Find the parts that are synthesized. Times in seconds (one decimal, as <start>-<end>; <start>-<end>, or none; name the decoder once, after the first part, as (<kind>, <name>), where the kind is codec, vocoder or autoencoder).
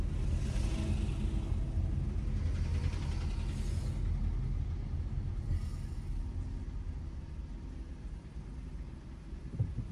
none